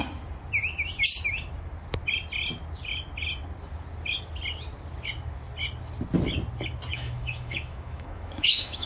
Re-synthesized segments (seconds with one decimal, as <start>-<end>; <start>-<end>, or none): 6.9-8.9